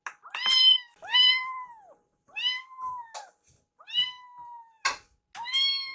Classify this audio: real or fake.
real